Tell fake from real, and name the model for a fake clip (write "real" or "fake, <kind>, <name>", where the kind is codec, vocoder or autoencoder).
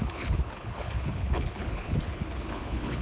fake, codec, HILCodec